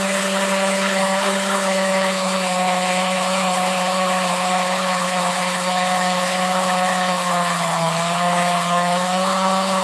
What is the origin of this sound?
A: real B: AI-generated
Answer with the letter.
B